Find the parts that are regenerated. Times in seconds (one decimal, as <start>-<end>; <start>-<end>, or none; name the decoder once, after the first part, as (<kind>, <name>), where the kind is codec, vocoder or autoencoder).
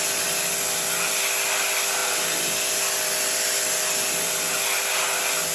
none